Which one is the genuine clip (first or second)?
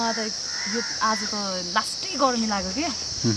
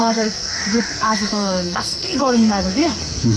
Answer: first